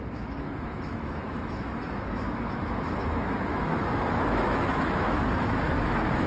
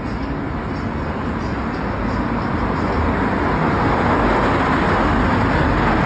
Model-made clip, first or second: first